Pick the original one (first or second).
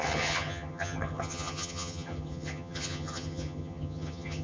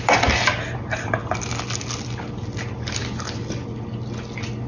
second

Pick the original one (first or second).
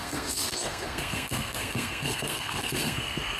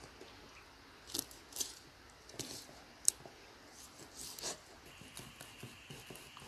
second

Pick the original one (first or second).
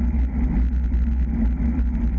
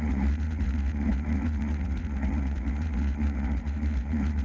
first